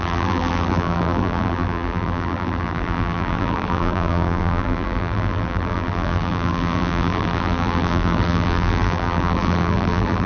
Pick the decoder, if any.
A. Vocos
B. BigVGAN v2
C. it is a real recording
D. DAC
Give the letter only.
B